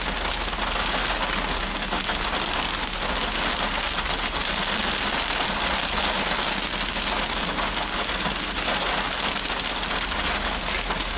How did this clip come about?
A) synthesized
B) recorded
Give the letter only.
B